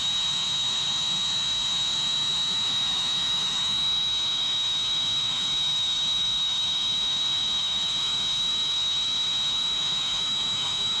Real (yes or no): no